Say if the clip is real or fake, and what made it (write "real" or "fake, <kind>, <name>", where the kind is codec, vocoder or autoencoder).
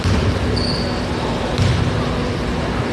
real